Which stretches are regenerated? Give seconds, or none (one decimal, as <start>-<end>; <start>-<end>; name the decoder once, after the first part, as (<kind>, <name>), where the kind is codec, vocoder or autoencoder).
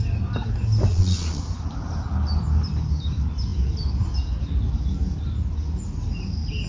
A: 0.9-1.4 (vocoder, Vocos)